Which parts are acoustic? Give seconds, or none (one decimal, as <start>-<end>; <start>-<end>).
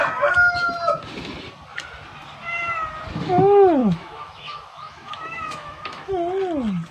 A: 0.0-3.8; 6.1-6.9